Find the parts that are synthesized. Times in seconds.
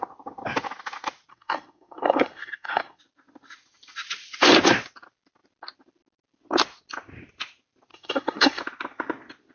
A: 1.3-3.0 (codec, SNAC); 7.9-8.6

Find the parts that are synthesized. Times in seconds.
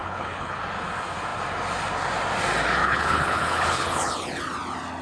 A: 0.0-0.6 (codec, HILCodec); 2.8-4.4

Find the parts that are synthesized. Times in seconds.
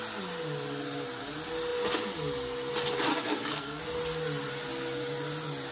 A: 3.1-3.8 (codec, SNAC)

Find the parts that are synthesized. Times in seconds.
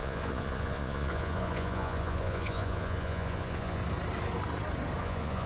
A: 0.0-3.8 (vocoder, Vocos); 5.0-5.5